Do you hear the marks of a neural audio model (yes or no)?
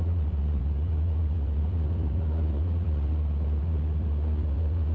yes